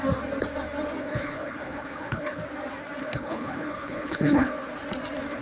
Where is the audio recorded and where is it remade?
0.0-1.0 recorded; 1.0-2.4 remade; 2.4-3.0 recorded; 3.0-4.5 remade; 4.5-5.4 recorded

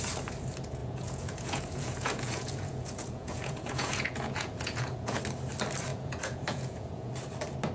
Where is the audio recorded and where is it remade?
0.0-0.8 recorded; 0.8-5.2 remade; 5.2-5.9 recorded; 5.9-7.1 remade; 7.1-7.7 recorded

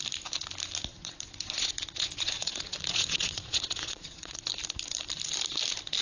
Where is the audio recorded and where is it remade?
0.0-0.9 recorded; 0.9-4.5 remade; 4.5-6.0 recorded

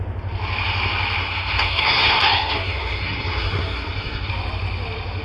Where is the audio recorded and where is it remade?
0.0-1.2 recorded; 1.2-4.3 remade; 4.3-5.2 recorded

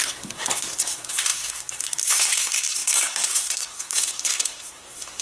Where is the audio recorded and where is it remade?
0.0-5.2 remade